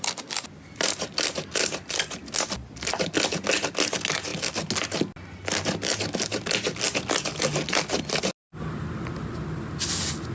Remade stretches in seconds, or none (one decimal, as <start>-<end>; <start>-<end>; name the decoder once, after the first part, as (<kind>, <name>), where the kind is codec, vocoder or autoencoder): none